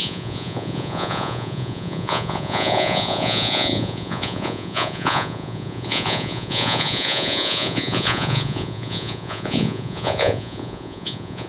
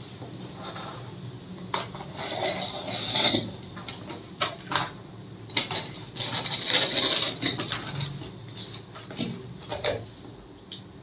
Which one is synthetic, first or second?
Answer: first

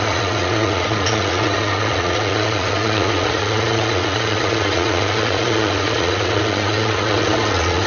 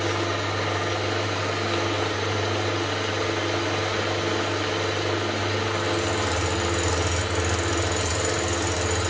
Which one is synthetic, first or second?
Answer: first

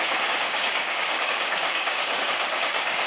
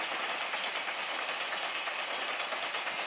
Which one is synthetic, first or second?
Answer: first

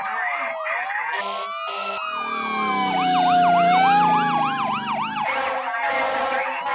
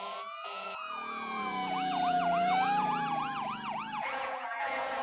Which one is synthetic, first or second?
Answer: second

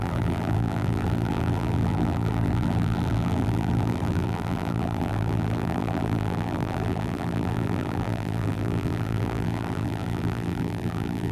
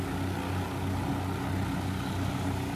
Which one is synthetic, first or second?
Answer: first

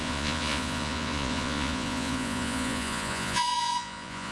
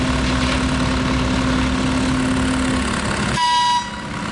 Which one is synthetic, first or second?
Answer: first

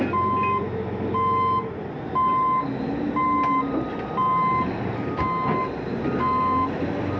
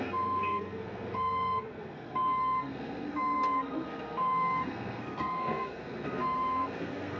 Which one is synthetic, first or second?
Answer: second